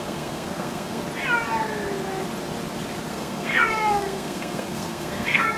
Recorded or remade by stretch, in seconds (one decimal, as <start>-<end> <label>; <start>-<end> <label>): 0.0-1.0 remade; 1.0-3.1 recorded; 3.1-5.6 remade